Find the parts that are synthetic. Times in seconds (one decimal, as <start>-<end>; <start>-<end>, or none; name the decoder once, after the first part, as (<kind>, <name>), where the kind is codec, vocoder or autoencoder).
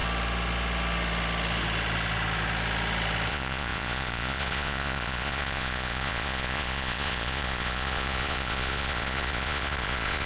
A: 3.3-10.3 (vocoder, Vocos)